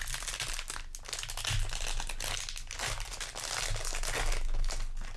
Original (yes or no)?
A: yes